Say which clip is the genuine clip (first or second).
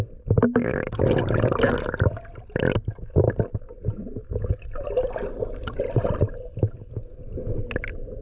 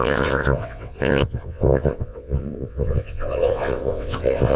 first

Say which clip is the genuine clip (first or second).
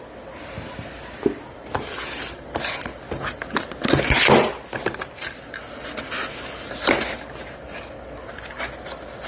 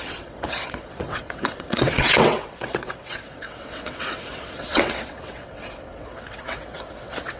first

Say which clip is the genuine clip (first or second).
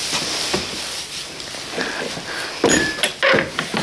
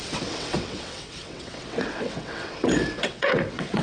first